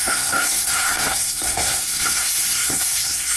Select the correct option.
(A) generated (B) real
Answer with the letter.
A